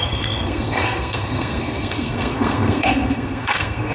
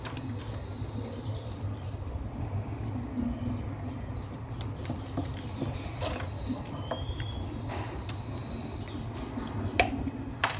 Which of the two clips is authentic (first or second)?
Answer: second